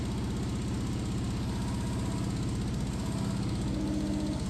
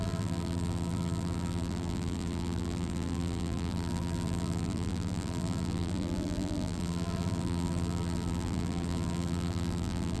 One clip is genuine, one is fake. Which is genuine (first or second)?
first